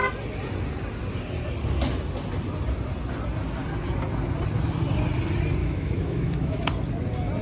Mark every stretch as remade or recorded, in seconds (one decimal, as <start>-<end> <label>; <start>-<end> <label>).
0.0-5.6 recorded; 5.6-6.6 remade; 6.6-7.4 recorded